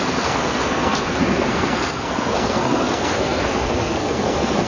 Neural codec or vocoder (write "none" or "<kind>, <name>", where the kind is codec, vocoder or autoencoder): codec, SNAC